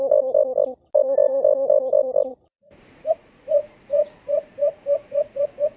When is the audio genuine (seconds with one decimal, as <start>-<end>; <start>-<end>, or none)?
0.0-2.3